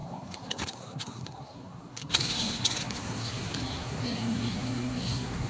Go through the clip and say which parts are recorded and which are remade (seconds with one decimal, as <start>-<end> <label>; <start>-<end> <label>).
0.0-5.5 remade

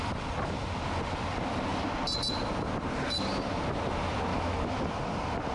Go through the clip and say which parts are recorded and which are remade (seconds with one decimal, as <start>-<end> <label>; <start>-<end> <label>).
0.0-4.3 recorded; 4.3-4.8 remade; 4.8-5.5 recorded

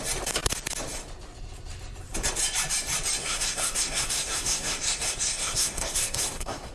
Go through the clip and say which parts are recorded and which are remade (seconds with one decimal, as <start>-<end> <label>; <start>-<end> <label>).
0.0-3.2 recorded; 3.2-6.7 remade

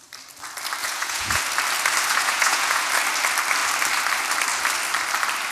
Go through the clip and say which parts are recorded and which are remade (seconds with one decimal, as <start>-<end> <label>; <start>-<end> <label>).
0.0-0.8 recorded; 0.8-1.4 remade; 1.4-2.1 recorded; 2.1-2.9 remade; 2.9-5.5 recorded

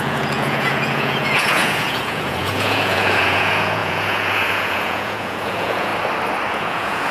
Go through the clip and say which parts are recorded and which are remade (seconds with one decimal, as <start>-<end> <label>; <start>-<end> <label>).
0.0-5.9 remade; 5.9-6.5 recorded; 6.5-7.1 remade